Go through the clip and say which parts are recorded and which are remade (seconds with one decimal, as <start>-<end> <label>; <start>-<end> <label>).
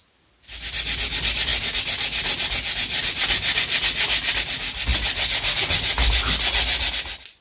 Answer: 0.0-7.4 recorded